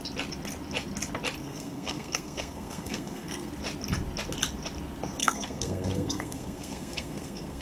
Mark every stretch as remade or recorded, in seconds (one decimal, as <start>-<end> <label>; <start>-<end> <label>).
0.0-1.4 recorded; 1.4-3.5 remade; 3.5-5.2 recorded; 5.2-7.6 remade